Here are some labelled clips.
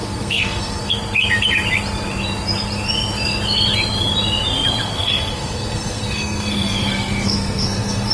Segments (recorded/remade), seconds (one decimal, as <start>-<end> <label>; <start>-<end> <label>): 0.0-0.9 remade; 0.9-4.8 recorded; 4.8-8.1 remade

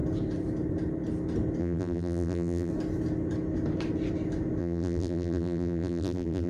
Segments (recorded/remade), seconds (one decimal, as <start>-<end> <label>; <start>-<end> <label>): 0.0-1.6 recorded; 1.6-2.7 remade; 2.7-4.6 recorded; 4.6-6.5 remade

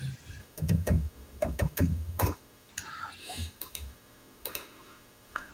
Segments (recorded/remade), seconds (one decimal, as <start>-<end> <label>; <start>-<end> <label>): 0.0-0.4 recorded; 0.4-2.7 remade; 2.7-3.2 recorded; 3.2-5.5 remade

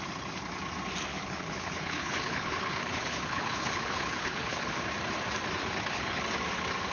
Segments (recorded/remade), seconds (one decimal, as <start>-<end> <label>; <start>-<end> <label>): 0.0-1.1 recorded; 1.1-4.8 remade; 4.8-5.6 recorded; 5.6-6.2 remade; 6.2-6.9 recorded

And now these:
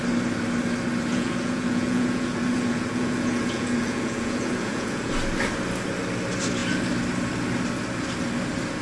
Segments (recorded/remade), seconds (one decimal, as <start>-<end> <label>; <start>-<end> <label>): 0.0-1.1 recorded; 1.1-5.1 remade; 5.1-8.8 recorded